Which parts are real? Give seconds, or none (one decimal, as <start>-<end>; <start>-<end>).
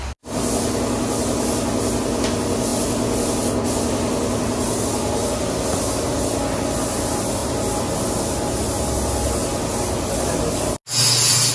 0.0-11.5